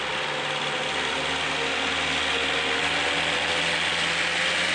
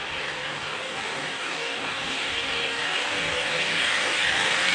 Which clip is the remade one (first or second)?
second